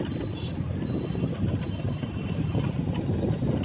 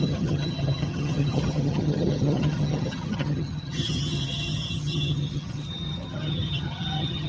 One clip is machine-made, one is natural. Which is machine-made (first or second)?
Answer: second